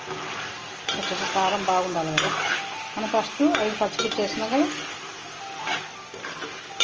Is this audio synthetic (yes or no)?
no